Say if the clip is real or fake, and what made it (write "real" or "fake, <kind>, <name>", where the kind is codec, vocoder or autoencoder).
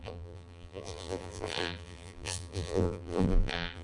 fake, vocoder, BigVGAN v2